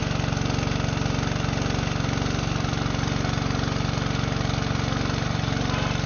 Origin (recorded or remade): recorded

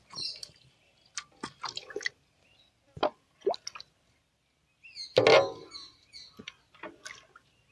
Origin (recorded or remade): recorded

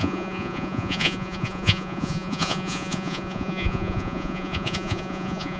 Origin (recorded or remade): remade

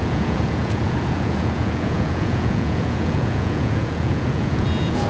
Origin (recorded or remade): remade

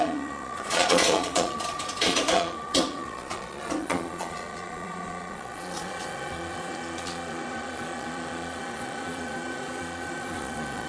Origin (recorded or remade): remade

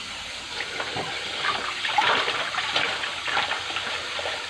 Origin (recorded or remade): recorded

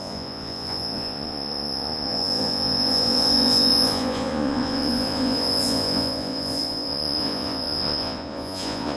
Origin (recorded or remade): remade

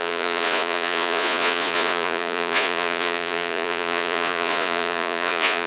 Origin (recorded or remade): remade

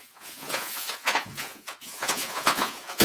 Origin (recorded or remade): remade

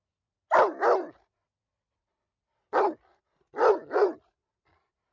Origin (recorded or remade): recorded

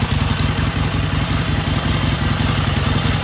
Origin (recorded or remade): recorded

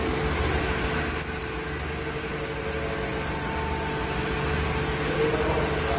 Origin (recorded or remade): recorded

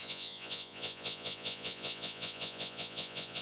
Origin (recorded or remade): remade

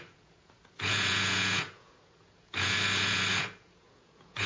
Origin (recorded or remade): remade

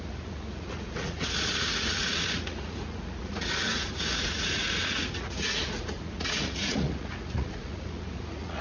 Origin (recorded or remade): remade